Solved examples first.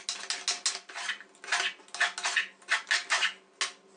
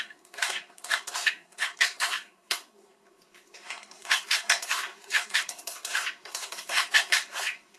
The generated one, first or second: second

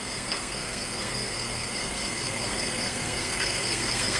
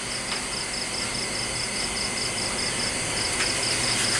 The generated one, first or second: first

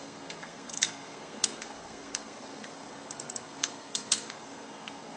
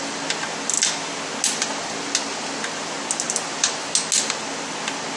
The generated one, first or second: first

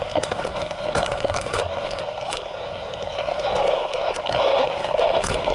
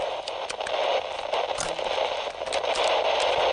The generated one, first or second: first